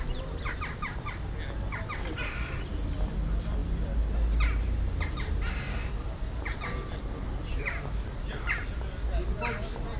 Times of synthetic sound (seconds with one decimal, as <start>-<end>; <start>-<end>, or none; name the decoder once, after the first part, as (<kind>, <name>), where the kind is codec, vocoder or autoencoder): none